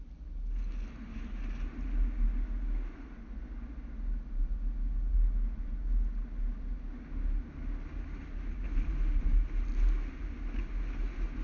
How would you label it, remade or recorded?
recorded